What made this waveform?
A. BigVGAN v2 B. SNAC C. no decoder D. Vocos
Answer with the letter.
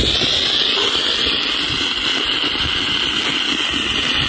C